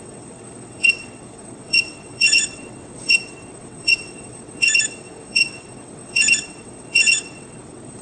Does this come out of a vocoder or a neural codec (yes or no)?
yes